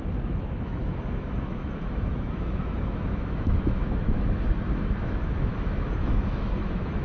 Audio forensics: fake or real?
fake